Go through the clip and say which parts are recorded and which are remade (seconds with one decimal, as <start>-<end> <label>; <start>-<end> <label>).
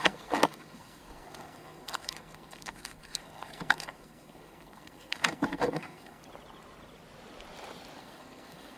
0.0-6.2 remade; 6.2-8.0 recorded; 8.0-8.8 remade